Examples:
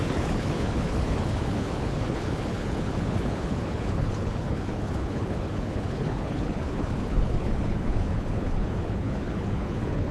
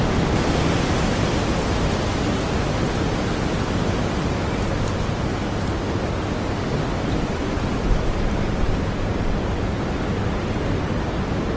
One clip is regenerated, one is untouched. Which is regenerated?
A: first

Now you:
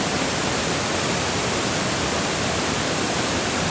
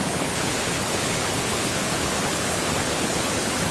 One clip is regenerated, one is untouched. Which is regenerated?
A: second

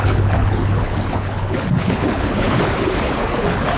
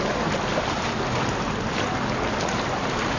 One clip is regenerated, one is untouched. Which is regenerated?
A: first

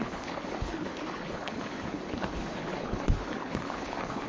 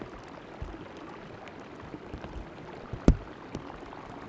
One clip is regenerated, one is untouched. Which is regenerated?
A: first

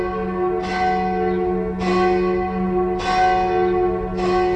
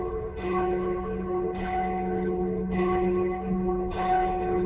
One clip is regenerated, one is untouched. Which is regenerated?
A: second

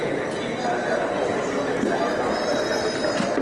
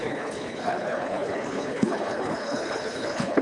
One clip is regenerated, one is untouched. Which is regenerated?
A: second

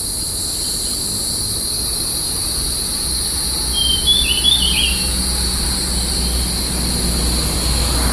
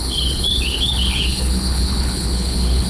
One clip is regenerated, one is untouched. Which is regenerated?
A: second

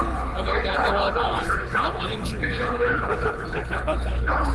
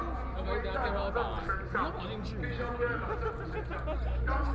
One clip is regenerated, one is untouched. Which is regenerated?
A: first